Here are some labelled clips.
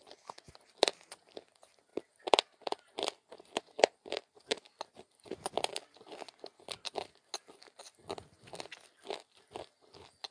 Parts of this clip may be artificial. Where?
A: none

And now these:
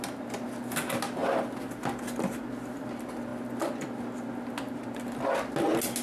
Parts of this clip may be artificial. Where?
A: none

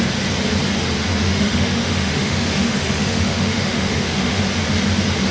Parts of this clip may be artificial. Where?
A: 1.2-4.4